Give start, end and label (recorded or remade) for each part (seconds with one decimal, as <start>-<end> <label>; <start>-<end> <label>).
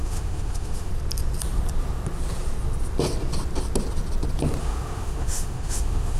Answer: 0.0-0.9 remade; 0.9-4.6 recorded; 4.6-6.2 remade